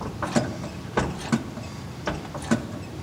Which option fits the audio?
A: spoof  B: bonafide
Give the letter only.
B